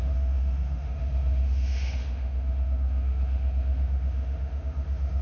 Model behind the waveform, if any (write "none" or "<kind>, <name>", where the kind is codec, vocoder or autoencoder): autoencoder, DAC-VAE